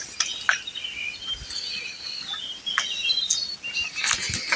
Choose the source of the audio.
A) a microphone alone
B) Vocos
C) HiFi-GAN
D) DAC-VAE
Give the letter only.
A